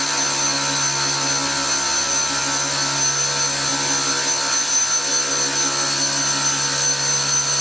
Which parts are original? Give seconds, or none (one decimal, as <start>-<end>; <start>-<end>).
0.0-7.6